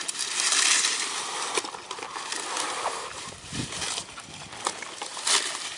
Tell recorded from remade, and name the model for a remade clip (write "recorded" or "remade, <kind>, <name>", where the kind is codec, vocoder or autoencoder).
recorded